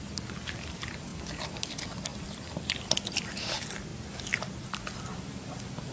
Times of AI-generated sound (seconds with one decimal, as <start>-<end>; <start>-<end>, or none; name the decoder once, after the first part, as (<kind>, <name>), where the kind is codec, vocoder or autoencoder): 0.0-5.9 (vocoder, BigVGAN v2)